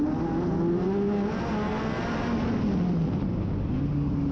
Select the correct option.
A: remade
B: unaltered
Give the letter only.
B